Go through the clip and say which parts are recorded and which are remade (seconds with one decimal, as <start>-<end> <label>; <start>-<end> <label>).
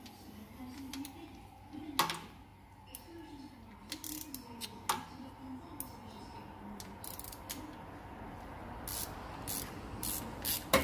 0.0-10.8 recorded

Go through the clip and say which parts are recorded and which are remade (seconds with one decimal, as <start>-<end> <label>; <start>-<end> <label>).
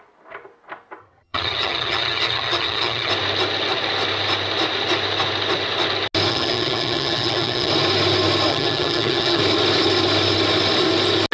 0.0-1.0 recorded; 1.0-3.1 remade; 3.1-6.3 recorded; 6.3-7.7 remade; 7.7-8.5 recorded; 8.5-9.4 remade; 9.4-11.3 recorded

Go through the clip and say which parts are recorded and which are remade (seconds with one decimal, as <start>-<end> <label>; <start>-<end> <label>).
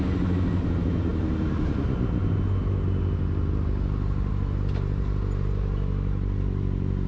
0.0-7.1 recorded